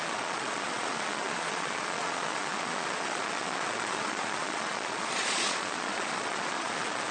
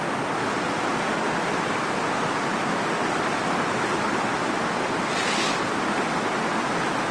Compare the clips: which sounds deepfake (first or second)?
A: first